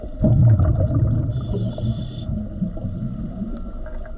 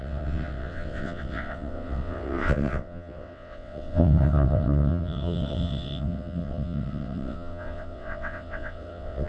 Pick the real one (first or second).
first